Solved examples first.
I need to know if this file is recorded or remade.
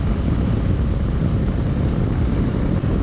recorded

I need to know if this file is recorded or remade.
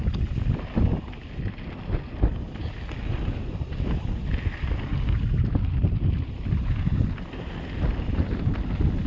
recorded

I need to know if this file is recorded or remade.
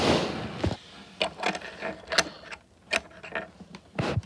recorded